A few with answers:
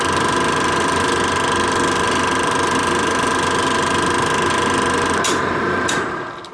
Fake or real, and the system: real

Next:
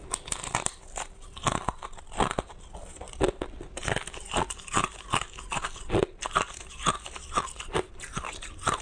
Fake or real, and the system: real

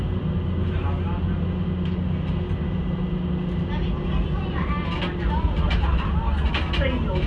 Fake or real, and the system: real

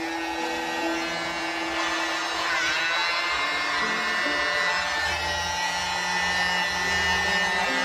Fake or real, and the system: real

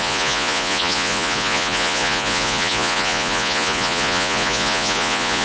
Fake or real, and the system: fake, vocoder, Vocos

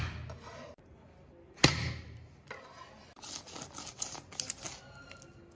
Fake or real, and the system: real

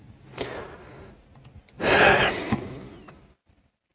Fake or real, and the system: real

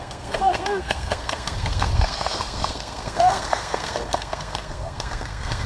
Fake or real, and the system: fake, codec, SNAC